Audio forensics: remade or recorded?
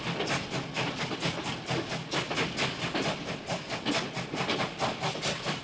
recorded